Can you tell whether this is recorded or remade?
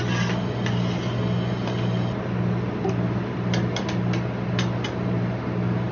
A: recorded